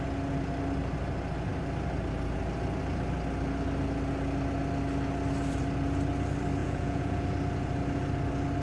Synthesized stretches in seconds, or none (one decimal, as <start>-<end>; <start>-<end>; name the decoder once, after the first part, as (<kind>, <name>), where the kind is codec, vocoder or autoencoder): 6.6-7.2 (vocoder, Vocos)